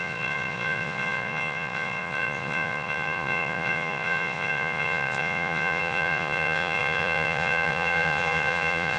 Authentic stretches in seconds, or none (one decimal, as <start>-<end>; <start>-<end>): none